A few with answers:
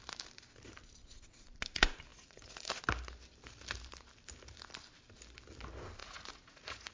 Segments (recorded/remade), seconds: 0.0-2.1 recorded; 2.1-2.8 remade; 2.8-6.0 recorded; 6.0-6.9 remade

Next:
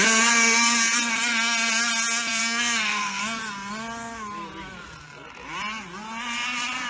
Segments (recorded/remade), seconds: 0.0-2.4 recorded; 2.4-3.2 remade; 3.2-6.9 recorded

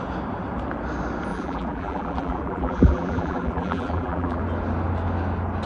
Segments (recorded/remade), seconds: 0.0-1.3 recorded; 1.3-4.4 remade; 4.4-5.7 recorded

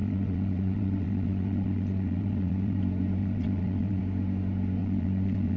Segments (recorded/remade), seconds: 0.0-2.8 remade; 2.8-3.2 recorded; 3.2-4.0 remade; 4.0-4.8 recorded; 4.8-5.6 remade

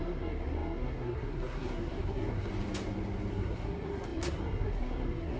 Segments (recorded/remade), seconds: 0.0-2.5 remade; 2.5-3.3 recorded; 3.3-5.4 remade